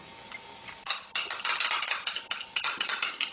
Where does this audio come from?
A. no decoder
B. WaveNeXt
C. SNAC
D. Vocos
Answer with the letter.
A